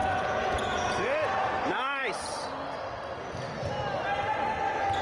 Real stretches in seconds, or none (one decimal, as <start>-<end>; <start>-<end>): 1.5-5.0